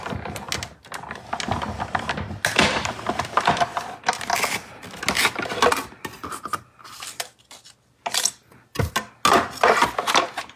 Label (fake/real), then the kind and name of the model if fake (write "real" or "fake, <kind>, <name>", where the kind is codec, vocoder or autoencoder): real